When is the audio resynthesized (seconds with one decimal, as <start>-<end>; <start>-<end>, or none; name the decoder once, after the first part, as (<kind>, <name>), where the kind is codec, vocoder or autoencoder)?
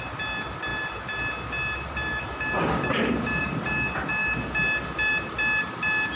none